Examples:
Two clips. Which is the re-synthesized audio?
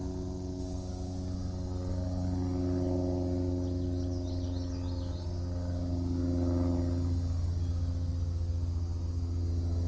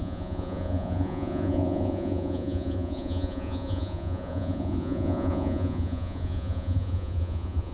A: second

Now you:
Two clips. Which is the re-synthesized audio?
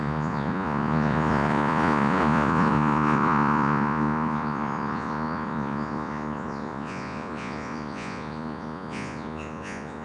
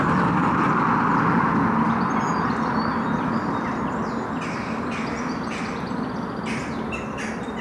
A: first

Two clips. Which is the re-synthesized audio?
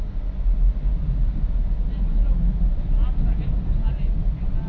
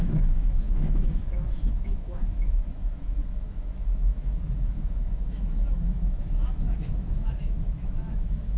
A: second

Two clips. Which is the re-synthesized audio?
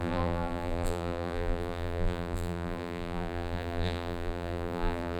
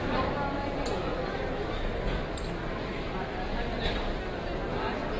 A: first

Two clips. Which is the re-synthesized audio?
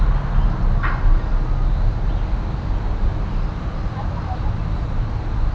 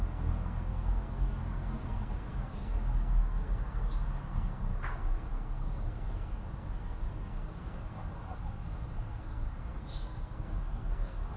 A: second